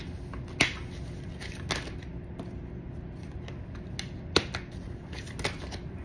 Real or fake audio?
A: real